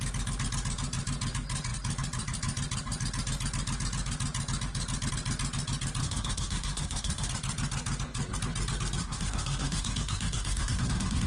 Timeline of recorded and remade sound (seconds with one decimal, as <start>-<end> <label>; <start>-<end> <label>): 0.0-6.0 recorded; 6.0-7.3 remade; 7.3-9.0 recorded; 9.0-11.3 remade